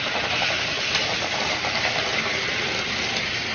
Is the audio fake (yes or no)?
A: no